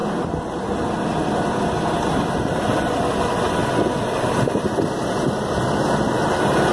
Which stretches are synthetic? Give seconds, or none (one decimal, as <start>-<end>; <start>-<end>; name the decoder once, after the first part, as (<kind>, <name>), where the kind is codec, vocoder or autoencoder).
none